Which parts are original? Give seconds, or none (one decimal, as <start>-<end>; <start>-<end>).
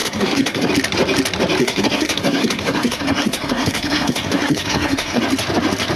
0.7-1.6; 5.2-6.0